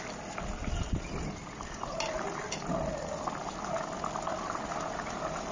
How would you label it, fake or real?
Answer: real